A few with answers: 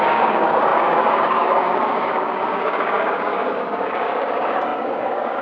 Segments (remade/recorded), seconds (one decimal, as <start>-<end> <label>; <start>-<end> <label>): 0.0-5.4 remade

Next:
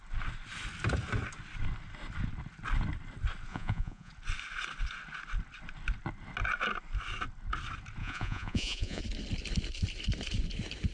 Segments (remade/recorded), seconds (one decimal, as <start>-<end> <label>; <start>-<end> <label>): 0.0-3.5 recorded; 3.5-4.1 remade; 4.1-8.0 recorded; 8.0-9.0 remade; 9.0-10.9 recorded

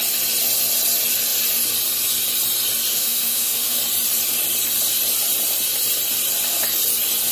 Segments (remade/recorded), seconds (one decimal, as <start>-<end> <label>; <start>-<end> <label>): 0.0-2.9 recorded; 2.9-3.8 remade; 3.8-7.3 recorded

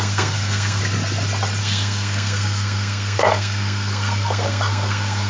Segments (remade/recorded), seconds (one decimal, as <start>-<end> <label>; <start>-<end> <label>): 0.0-0.8 remade; 0.8-1.6 recorded; 1.6-5.3 remade